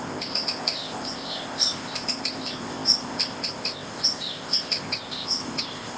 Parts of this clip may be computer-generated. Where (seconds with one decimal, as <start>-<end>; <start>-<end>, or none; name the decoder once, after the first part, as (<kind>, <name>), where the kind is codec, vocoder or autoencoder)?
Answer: 0.0-6.0 (codec, ZipCodec)

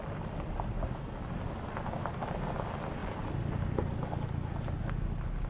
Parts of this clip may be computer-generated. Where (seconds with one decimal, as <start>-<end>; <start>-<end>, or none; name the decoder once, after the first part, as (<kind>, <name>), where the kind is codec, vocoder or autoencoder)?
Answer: none

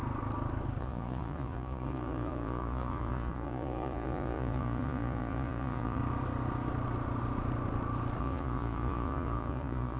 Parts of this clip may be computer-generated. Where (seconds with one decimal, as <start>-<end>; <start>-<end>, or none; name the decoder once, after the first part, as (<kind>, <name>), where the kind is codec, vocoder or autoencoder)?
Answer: 0.8-6.0 (vocoder, Vocos); 8.2-10.0

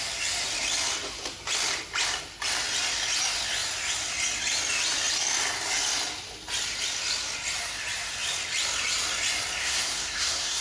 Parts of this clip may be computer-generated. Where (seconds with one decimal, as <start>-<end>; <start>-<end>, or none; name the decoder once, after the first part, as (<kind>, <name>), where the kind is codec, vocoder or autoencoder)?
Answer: 9.6-10.6 (codec, SNAC)

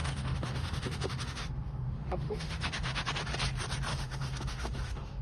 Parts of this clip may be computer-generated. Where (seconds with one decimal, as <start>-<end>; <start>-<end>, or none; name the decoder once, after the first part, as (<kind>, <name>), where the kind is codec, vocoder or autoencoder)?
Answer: 0.0-3.1 (autoencoder, DAC-VAE); 3.9-5.2

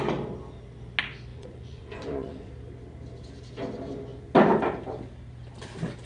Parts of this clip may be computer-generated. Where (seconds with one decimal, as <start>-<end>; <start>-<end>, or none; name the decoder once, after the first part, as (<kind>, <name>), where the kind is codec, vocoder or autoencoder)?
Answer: 1.3-2.5 (vocoder, Vocos)

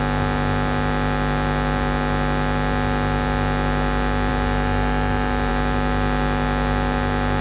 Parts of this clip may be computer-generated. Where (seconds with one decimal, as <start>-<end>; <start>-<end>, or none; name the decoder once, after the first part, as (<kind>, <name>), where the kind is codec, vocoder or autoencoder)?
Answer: none

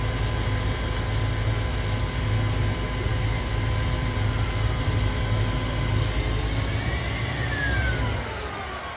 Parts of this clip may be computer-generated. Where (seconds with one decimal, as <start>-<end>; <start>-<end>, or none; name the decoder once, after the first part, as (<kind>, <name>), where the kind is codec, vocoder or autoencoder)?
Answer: 3.1-5.2 (vocoder, BigVGAN v2)